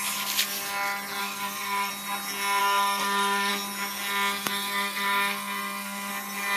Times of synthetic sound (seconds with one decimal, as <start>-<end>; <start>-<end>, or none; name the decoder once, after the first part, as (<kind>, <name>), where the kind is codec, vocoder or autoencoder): 1.2-1.9 (codec, SNAC); 2.6-3.5; 4.4-6.1